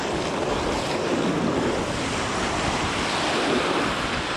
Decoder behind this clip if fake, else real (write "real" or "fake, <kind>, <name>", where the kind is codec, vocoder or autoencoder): real